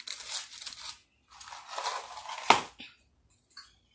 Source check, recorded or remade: recorded